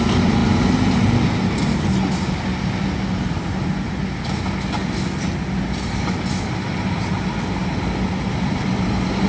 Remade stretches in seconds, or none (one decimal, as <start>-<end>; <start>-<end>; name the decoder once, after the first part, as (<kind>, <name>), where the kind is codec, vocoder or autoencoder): none